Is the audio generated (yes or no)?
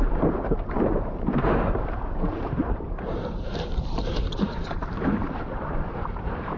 yes